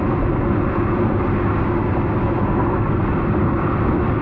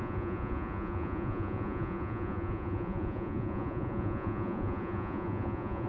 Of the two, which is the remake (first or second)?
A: second